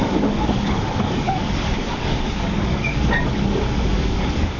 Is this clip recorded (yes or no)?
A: no